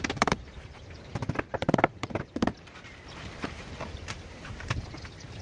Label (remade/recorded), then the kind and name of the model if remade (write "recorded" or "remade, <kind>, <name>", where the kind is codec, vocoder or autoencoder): remade, vocoder, BigVGAN v2